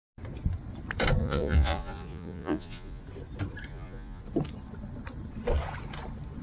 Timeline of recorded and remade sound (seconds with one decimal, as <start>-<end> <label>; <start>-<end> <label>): 0.0-1.2 recorded; 1.2-3.0 remade; 3.0-3.7 recorded; 3.7-4.2 remade; 4.2-6.4 recorded